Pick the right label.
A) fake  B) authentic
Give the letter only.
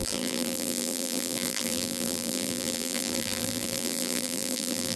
A